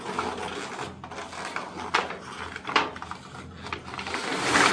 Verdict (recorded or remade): recorded